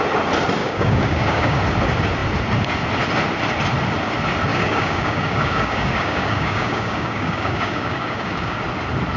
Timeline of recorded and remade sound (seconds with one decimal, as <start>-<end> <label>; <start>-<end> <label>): 0.0-0.6 recorded; 0.6-1.6 remade; 1.6-4.5 recorded; 4.5-8.6 remade; 8.6-9.2 recorded